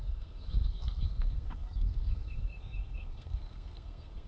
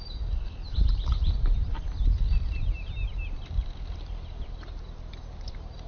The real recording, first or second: second